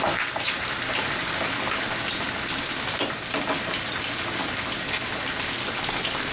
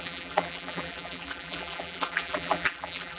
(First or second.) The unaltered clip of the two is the first